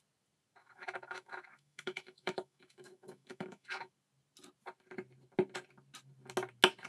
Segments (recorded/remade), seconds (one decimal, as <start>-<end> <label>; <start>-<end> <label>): 0.0-0.6 recorded; 0.6-3.9 remade; 3.9-6.9 recorded